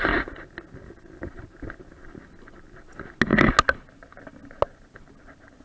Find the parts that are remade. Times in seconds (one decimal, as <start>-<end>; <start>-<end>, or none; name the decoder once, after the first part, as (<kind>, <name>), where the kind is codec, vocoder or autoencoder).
none